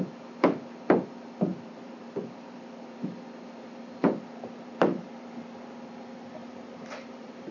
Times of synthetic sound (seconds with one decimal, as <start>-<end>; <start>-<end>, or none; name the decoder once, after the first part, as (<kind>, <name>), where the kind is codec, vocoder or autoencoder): 1.5-6.0 (vocoder, BigVGAN v2); 6.4-7.5